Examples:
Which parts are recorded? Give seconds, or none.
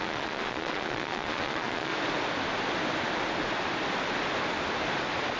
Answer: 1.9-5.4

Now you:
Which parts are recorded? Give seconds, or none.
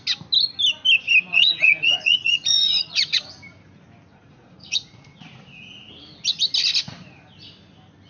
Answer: 0.0-1.3; 3.3-4.1; 5.9-8.1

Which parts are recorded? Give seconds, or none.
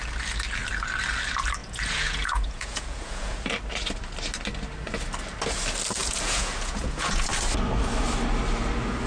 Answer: 0.0-1.6; 3.4-6.0; 7.3-9.1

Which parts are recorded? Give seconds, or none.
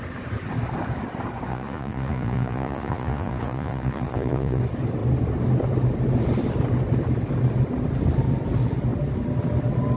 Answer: 0.0-1.5; 4.6-10.0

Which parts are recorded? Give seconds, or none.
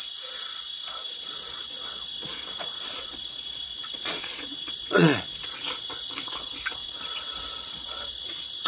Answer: 0.0-1.0; 5.4-6.8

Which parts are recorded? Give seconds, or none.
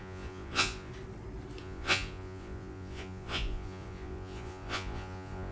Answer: 0.9-1.6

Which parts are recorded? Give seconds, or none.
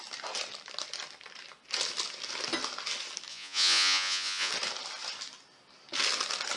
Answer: 0.0-3.3; 4.5-6.6